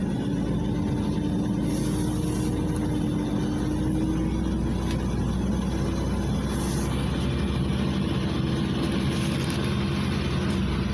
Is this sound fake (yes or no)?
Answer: no